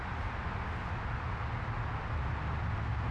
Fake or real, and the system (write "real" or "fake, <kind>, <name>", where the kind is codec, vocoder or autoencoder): real